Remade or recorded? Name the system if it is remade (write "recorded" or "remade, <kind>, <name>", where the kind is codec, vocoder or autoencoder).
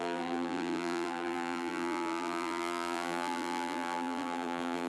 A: remade, vocoder, BigVGAN v2